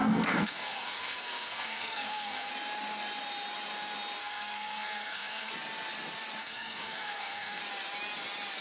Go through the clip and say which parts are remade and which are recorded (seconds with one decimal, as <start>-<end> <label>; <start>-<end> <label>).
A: 0.0-2.5 remade; 2.5-4.2 recorded; 4.2-5.5 remade; 5.5-6.4 recorded; 6.4-7.6 remade; 7.6-8.6 recorded